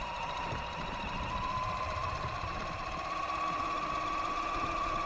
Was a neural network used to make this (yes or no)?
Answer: no